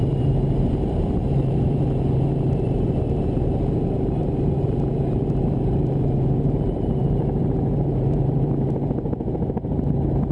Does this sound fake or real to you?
fake